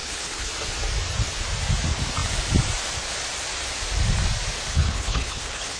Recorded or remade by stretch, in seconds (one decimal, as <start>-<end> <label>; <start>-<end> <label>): 0.0-0.5 remade; 0.5-4.7 recorded; 4.7-5.8 remade